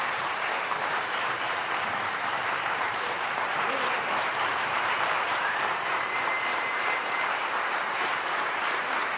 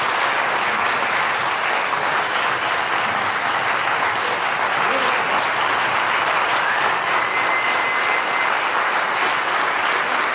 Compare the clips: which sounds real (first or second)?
second